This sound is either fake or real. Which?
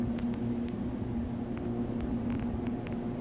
real